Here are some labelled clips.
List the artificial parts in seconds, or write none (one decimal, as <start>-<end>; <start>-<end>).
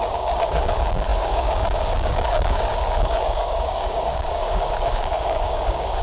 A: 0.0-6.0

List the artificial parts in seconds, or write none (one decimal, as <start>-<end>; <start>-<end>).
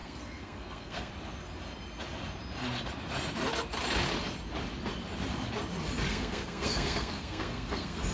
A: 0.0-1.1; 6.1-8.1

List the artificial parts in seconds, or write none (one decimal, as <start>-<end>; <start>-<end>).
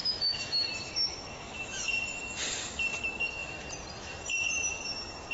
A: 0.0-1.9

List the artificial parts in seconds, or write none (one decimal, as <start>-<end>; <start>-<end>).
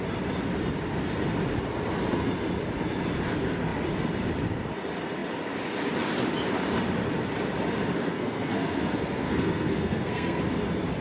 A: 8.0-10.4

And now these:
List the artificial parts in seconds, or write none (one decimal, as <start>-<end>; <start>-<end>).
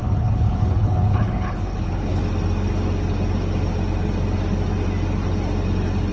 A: 0.0-2.2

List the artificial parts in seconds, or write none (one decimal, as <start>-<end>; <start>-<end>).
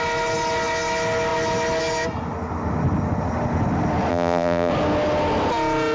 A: 4.1-4.7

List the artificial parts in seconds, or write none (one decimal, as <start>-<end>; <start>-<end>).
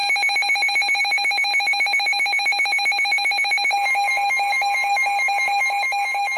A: 1.0-6.4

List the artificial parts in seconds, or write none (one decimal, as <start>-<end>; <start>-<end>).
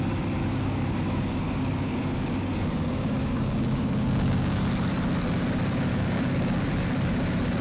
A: 0.4-4.6; 5.9-6.7